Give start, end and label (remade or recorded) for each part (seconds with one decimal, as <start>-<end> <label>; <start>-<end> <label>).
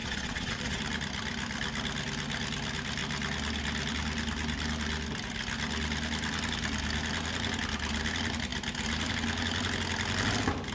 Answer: 0.0-0.8 remade; 0.8-10.7 recorded